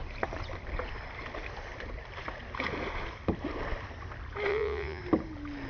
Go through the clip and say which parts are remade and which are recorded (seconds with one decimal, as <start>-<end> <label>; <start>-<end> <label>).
0.0-4.5 recorded; 4.5-5.0 remade; 5.0-5.7 recorded